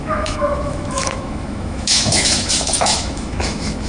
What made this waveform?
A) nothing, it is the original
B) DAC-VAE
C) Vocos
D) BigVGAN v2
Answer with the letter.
B